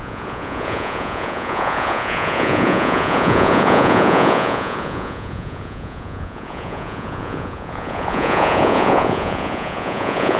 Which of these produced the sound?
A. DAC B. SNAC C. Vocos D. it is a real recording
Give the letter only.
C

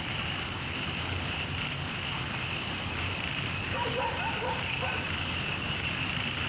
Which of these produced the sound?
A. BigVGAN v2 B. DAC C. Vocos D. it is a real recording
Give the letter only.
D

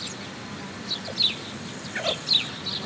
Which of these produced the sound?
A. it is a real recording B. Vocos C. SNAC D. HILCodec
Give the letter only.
A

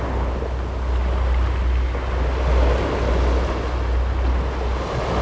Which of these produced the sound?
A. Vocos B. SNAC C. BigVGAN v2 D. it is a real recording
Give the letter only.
D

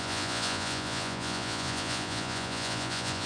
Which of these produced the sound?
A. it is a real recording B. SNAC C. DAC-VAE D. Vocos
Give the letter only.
D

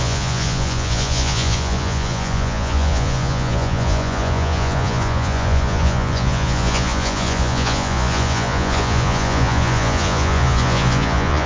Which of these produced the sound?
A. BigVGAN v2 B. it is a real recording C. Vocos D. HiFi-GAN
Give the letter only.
C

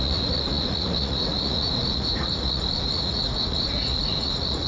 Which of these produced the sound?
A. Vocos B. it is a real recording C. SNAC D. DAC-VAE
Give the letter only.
A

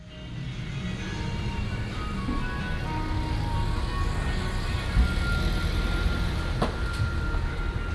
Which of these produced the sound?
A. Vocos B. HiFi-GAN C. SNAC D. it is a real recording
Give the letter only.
D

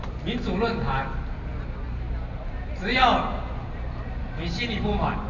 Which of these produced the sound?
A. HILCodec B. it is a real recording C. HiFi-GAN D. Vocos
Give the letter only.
B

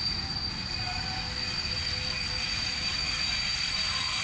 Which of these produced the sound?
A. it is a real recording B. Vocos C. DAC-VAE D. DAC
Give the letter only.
A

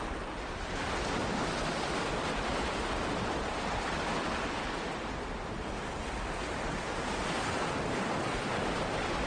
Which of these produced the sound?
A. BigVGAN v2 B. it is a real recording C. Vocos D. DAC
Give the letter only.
B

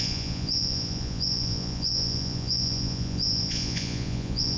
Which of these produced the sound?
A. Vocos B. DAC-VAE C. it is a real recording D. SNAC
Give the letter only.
A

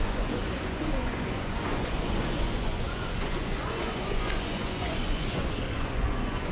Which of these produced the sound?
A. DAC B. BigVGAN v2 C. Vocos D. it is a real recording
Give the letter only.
C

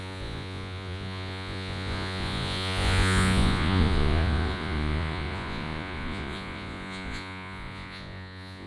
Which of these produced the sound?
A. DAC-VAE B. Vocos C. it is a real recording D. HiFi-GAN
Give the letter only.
B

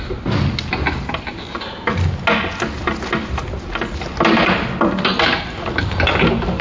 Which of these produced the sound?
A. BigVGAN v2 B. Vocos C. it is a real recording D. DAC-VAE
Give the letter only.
C